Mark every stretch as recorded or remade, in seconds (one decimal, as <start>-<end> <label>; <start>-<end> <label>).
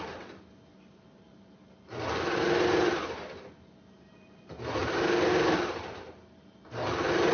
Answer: 0.0-7.3 recorded